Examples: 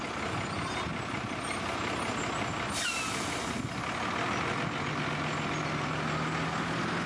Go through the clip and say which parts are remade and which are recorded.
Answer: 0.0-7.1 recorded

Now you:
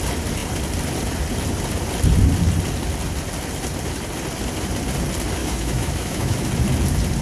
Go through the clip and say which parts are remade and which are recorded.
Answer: 0.0-5.4 recorded; 5.4-6.5 remade; 6.5-7.2 recorded

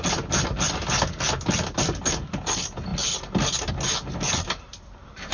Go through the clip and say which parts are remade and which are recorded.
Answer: 0.0-5.3 recorded

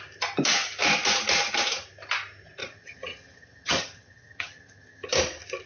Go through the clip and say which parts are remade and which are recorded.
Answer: 0.0-2.6 recorded; 2.6-5.1 remade; 5.1-5.7 recorded

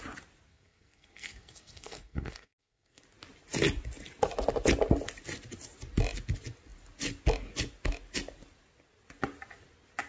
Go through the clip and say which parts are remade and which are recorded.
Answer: 0.0-0.5 recorded; 0.5-3.0 remade; 3.0-10.1 recorded

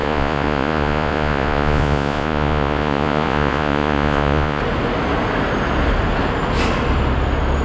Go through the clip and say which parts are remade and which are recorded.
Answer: 0.0-4.6 remade; 4.6-7.6 recorded